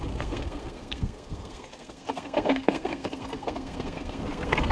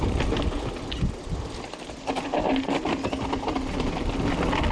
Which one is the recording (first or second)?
second